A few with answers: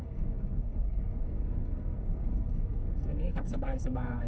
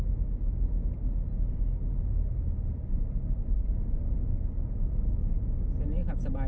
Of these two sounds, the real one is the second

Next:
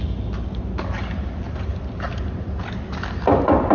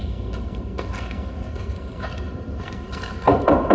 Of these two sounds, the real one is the first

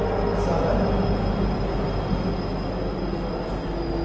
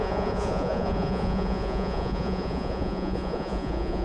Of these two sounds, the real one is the first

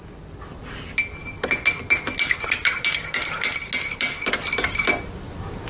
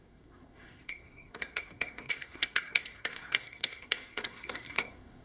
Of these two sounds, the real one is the first